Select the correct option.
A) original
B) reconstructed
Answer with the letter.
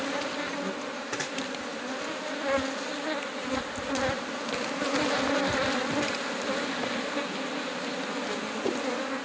A